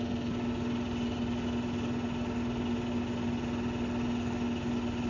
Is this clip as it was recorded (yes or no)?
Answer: yes